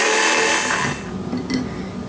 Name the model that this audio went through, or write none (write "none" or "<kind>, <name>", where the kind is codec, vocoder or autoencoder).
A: none